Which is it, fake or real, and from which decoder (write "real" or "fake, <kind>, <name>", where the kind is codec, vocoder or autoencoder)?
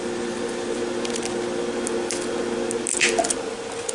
real